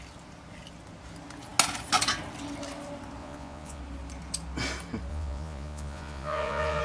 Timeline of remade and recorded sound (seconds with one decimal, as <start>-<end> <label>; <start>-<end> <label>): 0.0-3.2 recorded; 3.2-3.8 remade; 3.8-5.1 recorded; 5.1-6.8 remade